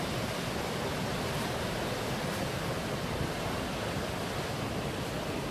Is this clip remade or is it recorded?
recorded